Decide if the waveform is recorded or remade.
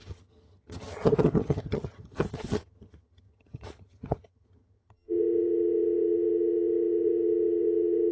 remade